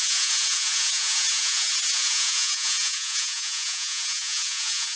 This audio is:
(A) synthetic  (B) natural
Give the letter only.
A